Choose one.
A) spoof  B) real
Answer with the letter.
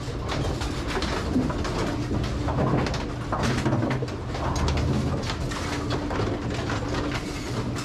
B